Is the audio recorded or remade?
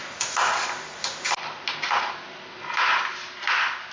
recorded